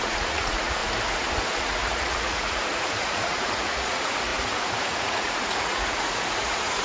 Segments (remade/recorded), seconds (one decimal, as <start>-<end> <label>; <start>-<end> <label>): 0.0-0.8 remade; 0.8-1.6 recorded; 1.6-6.8 remade